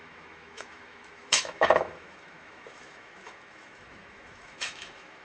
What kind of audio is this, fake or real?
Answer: fake